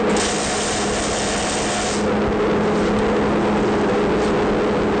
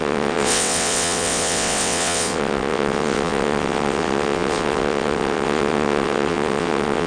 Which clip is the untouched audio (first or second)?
first